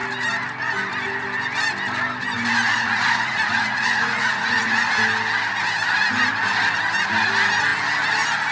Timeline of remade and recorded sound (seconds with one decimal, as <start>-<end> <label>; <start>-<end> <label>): 0.0-2.7 recorded; 2.7-4.8 remade; 4.8-8.5 recorded